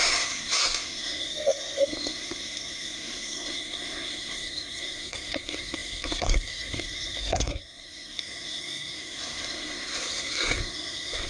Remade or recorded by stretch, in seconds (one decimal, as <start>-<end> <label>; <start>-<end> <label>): 0.0-11.3 remade